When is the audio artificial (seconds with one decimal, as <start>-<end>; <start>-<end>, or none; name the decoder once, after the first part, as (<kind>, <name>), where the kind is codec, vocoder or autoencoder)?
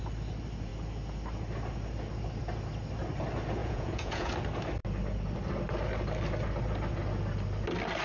3.6-4.3 (vocoder, Vocos)